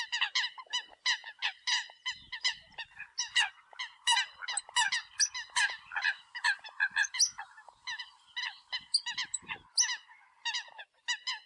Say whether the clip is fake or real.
real